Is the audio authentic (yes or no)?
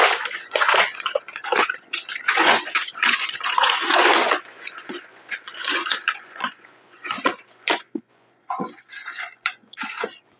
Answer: no